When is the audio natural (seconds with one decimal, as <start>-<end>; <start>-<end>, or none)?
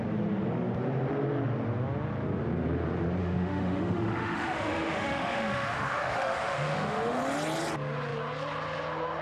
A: 0.0-3.2; 7.2-9.2